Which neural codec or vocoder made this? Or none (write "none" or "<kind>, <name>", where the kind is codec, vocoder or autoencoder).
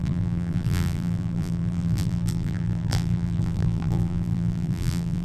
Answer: vocoder, BigVGAN v2